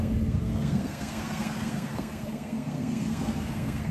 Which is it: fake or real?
fake